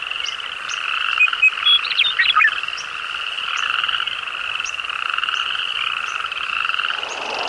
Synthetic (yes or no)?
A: no